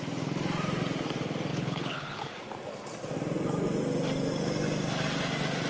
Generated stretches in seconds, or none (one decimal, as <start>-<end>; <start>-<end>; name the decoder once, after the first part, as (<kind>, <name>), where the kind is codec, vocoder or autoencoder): 1.5-2.3 (codec, HILCodec)